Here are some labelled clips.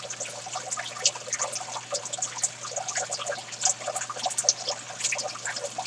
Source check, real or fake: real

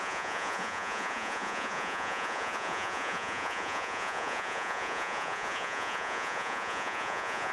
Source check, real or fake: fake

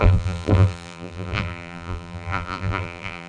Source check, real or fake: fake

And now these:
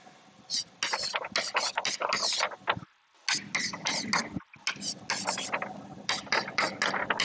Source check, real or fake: real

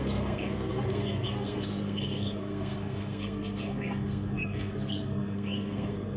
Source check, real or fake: fake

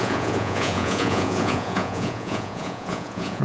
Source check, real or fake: fake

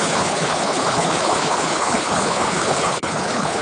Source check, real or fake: fake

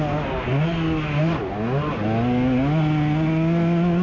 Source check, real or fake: real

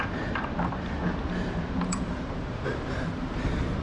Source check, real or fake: fake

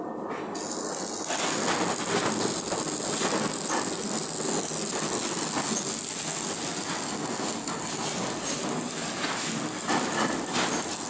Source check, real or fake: real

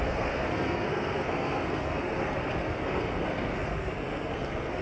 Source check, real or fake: fake